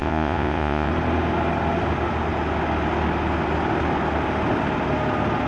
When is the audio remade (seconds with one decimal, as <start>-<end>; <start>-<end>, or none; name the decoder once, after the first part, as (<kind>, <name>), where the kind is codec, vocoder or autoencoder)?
0.0-0.9 (vocoder, Vocos)